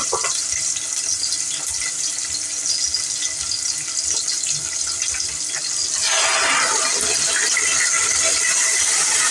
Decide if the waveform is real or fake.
real